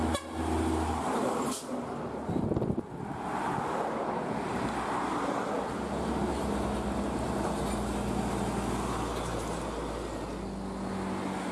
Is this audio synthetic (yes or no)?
no